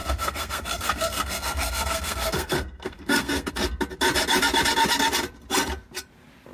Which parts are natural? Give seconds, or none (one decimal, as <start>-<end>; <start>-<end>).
3.5-6.5

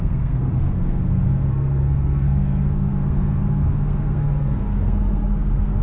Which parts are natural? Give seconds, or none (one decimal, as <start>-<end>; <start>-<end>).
none

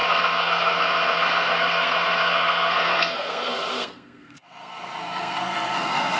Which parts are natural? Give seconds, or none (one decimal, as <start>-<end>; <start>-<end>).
none

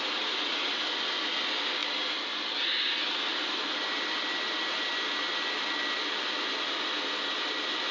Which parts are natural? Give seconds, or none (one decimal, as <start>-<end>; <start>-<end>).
0.0-7.9

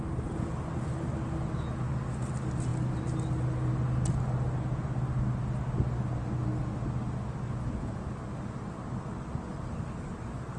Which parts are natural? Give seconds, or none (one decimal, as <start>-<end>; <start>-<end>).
0.0-10.6